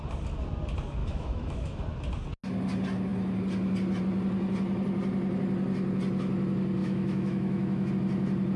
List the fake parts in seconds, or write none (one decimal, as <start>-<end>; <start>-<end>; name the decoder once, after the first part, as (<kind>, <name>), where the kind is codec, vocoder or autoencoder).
1.0-1.8 (autoencoder, DAC-VAE); 6.8-7.9